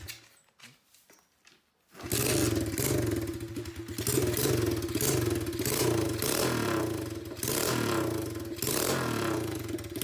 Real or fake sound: real